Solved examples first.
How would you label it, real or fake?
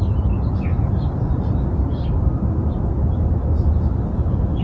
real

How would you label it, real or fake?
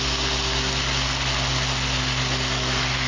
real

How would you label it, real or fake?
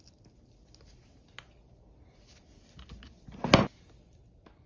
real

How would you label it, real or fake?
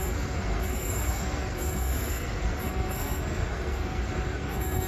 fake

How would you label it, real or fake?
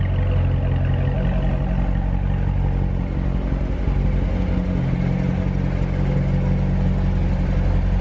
real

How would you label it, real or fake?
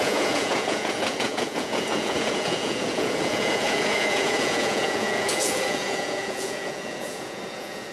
fake